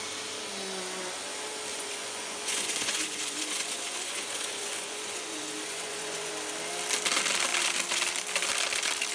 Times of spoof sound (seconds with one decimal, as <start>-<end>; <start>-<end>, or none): 1.7-6.3